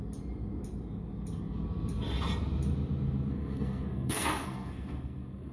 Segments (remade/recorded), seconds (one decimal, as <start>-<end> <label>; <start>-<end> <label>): 0.0-3.3 recorded; 3.3-5.5 remade